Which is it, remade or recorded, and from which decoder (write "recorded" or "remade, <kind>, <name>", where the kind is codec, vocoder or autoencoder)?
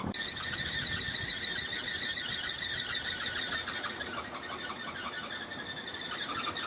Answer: recorded